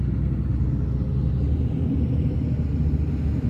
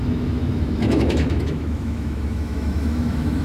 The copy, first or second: second